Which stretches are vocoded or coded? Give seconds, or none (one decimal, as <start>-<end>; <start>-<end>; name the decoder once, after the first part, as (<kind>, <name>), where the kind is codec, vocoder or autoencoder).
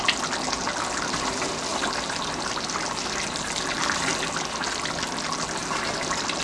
1.7-4.9 (vocoder, BigVGAN v2); 5.6-6.4